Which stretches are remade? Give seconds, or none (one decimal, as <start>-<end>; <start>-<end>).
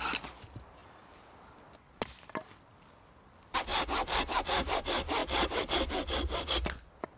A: 0.0-0.8; 2.2-3.7; 4.4-7.2